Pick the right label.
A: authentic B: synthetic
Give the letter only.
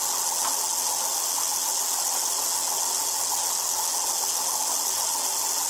A